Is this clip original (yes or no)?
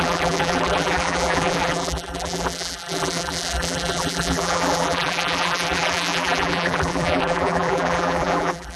no